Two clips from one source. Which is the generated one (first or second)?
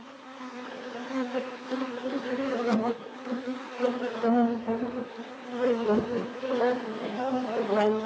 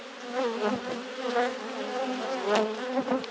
first